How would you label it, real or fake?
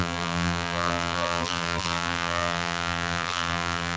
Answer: fake